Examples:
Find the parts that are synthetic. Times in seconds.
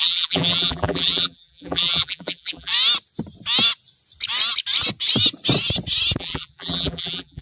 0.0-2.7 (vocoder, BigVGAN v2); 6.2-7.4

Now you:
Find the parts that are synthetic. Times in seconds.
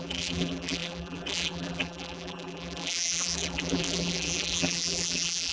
0.0-5.5 (vocoder, BigVGAN v2)